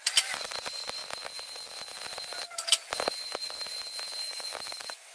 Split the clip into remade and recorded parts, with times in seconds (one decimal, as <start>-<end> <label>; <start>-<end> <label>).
0.0-4.2 recorded; 4.2-5.1 remade